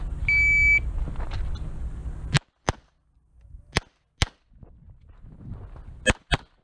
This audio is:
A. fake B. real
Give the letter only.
B